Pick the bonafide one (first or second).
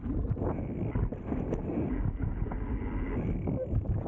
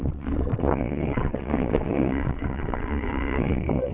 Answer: first